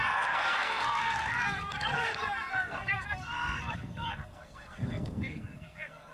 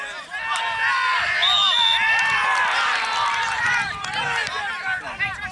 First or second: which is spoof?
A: first